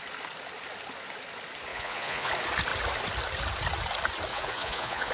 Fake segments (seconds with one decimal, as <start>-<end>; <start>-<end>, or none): 1.7-2.3; 4.3-5.1